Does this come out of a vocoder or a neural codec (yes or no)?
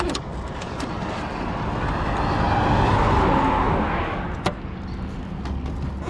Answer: no